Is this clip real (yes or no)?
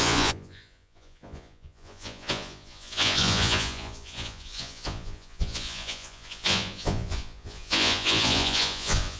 no